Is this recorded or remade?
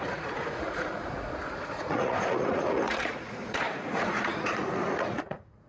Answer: remade